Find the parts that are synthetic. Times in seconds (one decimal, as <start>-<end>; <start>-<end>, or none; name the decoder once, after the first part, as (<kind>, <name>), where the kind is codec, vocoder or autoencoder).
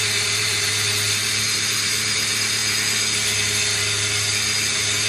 0.0-2.6 (vocoder, BigVGAN v2)